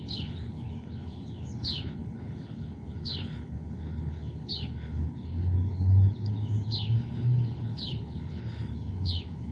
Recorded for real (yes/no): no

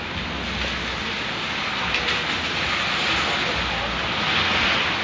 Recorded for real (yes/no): yes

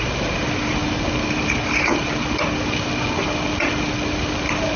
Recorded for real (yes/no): yes